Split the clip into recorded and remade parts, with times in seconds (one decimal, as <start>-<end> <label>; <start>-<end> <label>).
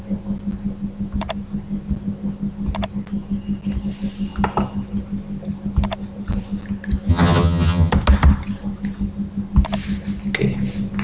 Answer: 0.0-7.1 recorded; 7.1-7.9 remade; 7.9-11.0 recorded